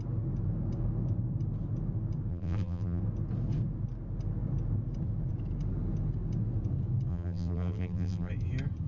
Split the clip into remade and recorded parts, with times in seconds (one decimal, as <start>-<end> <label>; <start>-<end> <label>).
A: 0.0-2.3 recorded; 2.3-3.0 remade; 3.0-7.1 recorded; 7.1-8.3 remade; 8.3-8.9 recorded